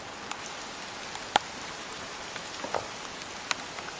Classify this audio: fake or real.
real